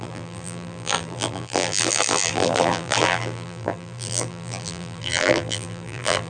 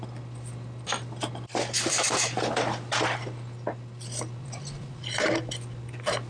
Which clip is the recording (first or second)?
second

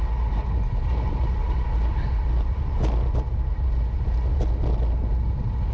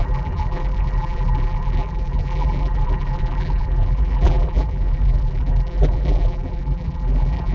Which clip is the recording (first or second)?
first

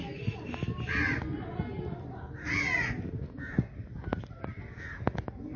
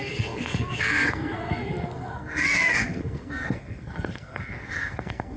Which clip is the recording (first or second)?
first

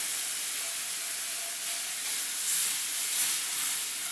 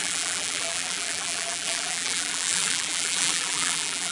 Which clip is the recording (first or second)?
first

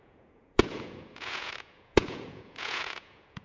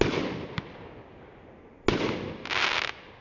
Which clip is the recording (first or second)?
second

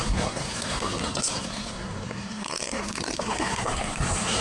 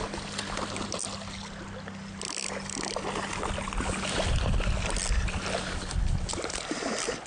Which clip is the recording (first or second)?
second